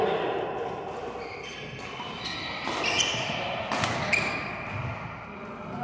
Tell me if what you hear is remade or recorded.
recorded